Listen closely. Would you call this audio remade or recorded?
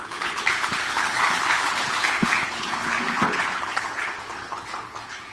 remade